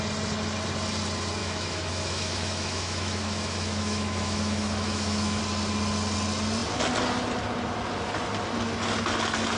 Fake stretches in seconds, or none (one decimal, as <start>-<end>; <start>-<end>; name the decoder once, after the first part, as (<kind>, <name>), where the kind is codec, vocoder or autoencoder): 1.4-5.4 (autoencoder, DAC-VAE)